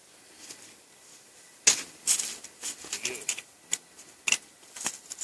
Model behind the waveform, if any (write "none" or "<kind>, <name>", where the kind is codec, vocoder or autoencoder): none